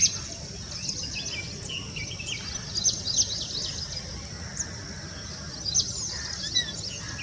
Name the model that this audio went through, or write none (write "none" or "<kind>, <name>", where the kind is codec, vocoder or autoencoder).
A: none